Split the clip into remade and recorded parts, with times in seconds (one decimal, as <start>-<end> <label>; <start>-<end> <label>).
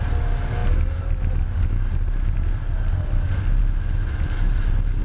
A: 0.0-5.0 recorded